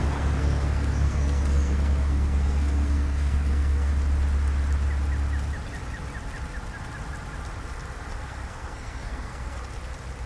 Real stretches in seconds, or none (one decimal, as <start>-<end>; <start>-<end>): 3.9-8.1; 9.6-10.3